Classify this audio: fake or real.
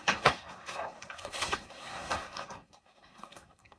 fake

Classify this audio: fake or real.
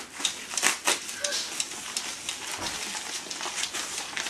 real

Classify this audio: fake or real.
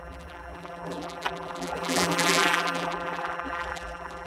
fake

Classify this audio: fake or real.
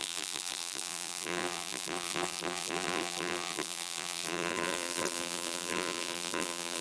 fake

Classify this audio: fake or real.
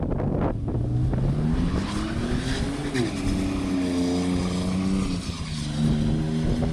real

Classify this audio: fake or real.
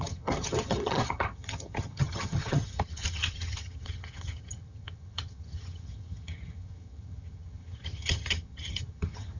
fake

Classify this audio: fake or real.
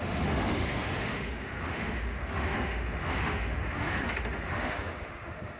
fake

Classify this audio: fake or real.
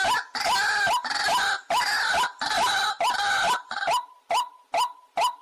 real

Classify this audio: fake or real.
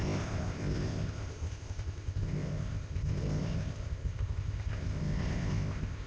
fake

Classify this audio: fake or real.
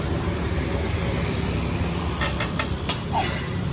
fake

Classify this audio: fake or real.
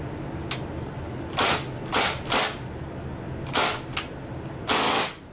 real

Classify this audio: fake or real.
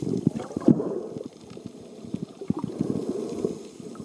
real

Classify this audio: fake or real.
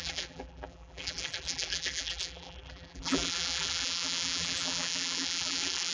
fake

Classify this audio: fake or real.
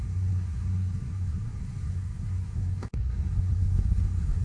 fake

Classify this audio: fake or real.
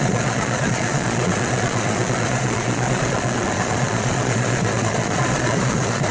fake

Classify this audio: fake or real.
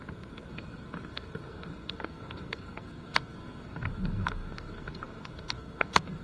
fake